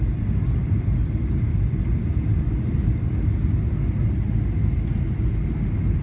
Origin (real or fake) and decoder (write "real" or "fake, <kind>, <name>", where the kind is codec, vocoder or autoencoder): real